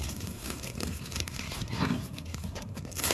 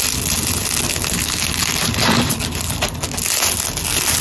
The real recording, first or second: second